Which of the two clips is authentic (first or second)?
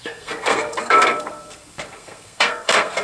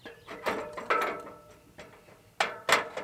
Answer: second